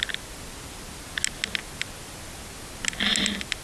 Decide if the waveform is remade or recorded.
recorded